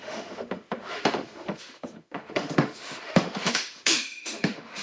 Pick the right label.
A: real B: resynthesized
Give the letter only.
B